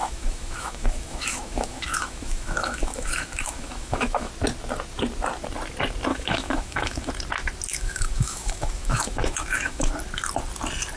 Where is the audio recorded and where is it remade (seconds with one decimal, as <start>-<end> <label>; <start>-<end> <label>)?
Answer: 0.0-4.3 remade; 4.3-6.1 recorded; 6.1-7.1 remade; 7.1-7.7 recorded; 7.7-9.9 remade; 9.9-11.0 recorded